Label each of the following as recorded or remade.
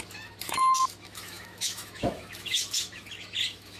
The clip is remade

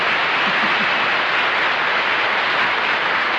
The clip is recorded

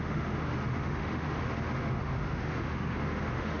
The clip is remade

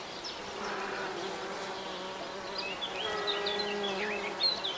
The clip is recorded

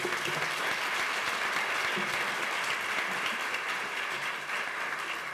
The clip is recorded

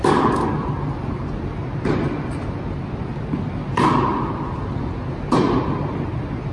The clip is recorded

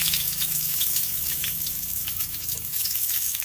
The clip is remade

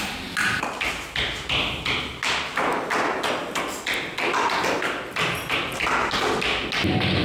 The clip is recorded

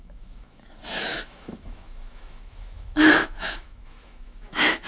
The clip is remade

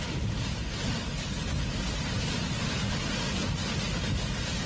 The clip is recorded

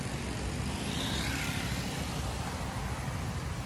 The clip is recorded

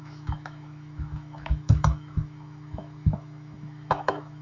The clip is remade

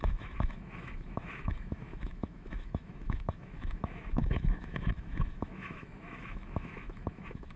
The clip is remade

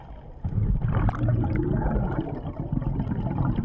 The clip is recorded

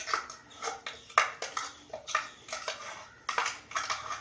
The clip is recorded